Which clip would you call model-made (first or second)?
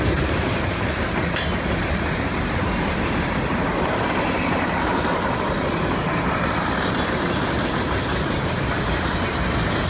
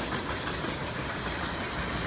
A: first